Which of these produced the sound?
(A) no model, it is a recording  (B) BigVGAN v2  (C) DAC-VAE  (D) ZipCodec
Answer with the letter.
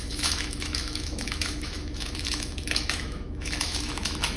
C